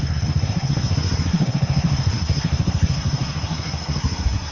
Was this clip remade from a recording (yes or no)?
yes